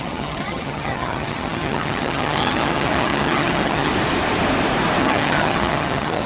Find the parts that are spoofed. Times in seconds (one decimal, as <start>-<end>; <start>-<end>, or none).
0.0-3.9; 5.0-6.3